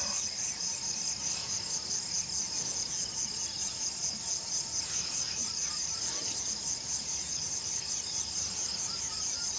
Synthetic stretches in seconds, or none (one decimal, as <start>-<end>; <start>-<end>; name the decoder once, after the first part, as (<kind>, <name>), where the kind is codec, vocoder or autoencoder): 0.0-1.4 (vocoder, BigVGAN v2); 4.8-6.0; 7.0-8.6